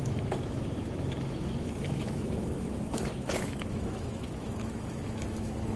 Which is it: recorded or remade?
remade